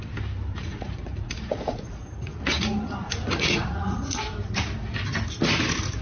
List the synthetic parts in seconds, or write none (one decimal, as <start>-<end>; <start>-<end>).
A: 0.6-4.2